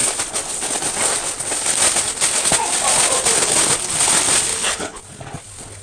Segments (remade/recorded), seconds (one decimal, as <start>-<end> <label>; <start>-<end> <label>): 0.0-4.5 recorded; 4.5-5.0 remade; 5.0-5.8 recorded